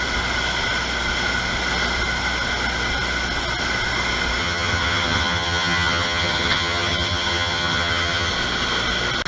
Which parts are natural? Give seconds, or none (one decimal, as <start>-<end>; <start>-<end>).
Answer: 0.0-4.4; 8.3-9.3